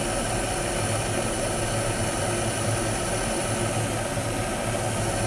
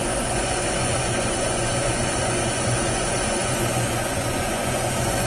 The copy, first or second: second